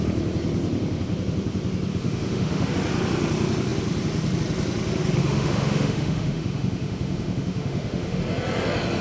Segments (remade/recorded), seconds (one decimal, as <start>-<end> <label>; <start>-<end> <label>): 0.0-1.9 recorded; 1.9-2.7 remade; 2.7-5.2 recorded; 5.2-8.2 remade; 8.2-9.0 recorded